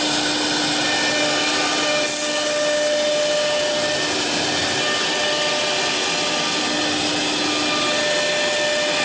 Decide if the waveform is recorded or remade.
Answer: recorded